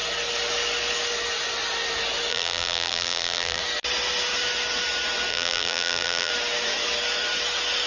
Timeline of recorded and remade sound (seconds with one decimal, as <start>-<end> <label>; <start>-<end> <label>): 0.0-2.3 recorded; 2.3-3.6 remade; 3.6-5.3 recorded; 5.3-6.3 remade; 6.3-7.9 recorded